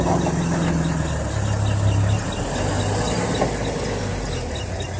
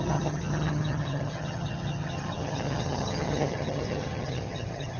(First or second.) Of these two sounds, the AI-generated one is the second